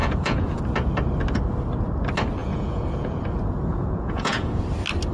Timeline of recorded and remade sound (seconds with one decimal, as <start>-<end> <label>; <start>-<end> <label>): 0.0-0.6 remade; 0.6-2.4 recorded; 2.4-3.2 remade; 3.2-3.7 recorded; 3.7-4.6 remade; 4.6-5.1 recorded